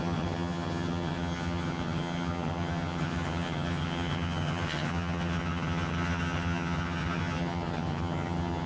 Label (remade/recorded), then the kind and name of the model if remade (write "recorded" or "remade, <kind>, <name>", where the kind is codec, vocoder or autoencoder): remade, vocoder, HiFi-GAN